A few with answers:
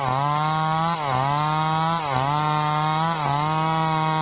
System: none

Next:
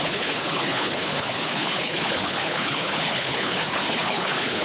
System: codec, HILCodec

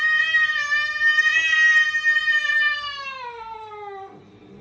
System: none